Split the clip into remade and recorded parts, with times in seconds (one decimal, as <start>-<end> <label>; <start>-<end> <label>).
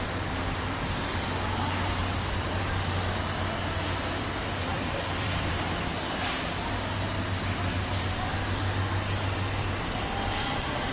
0.0-2.0 recorded; 2.0-2.6 remade; 2.6-4.7 recorded; 4.7-6.3 remade; 6.3-10.9 recorded